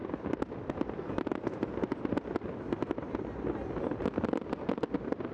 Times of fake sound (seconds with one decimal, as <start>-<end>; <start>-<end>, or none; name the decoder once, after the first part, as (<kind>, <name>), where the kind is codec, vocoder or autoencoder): none